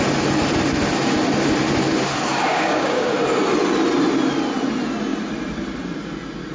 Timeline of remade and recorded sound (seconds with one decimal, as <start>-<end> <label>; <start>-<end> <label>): 0.0-2.5 recorded; 2.5-3.1 remade; 3.1-6.5 recorded